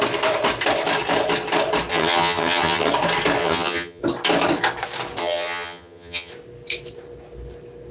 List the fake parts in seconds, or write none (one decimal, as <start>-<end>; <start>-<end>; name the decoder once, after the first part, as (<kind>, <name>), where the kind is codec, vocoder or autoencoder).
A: 1.9-2.9 (vocoder, HiFi-GAN); 3.4-4.0; 5.2-6.3